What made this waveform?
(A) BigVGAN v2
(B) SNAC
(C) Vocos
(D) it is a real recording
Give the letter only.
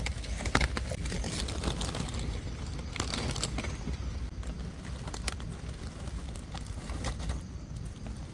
D